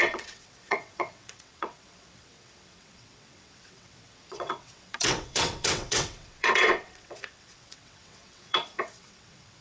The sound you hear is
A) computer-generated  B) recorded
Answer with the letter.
A